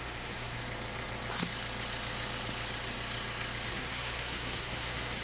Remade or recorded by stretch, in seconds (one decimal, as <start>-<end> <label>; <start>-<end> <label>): 0.0-0.6 remade; 0.6-3.7 recorded; 3.7-5.2 remade

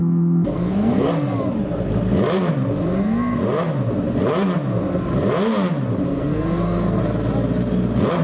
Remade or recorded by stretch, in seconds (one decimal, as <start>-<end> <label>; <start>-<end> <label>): 0.0-1.1 remade; 1.1-6.1 recorded; 6.1-7.0 remade; 7.0-8.2 recorded

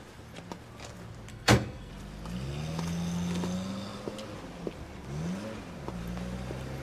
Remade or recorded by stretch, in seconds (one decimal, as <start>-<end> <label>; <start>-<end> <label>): 0.0-1.3 recorded; 1.3-1.9 remade; 1.9-6.8 recorded

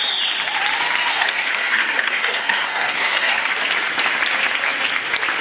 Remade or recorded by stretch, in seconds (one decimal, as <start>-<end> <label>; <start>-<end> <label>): 0.0-1.1 recorded; 1.1-3.5 remade; 3.5-5.4 recorded

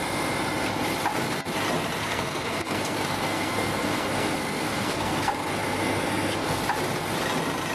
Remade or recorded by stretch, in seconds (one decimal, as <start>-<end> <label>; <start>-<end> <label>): 0.0-2.0 recorded; 2.0-6.6 remade; 6.6-7.7 recorded